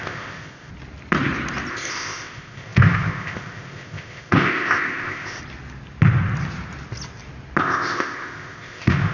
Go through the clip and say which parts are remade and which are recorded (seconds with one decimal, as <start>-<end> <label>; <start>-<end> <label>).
0.0-0.7 remade; 0.7-1.7 recorded; 1.7-5.4 remade; 5.4-7.6 recorded; 7.6-9.1 remade